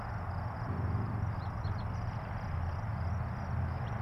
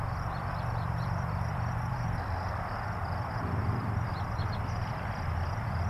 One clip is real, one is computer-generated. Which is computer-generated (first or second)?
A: second